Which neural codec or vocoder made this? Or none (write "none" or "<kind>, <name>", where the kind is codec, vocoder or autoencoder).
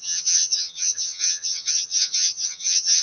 vocoder, HiFi-GAN